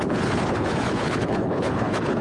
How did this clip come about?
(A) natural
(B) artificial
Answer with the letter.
B